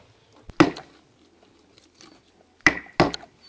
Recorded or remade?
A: recorded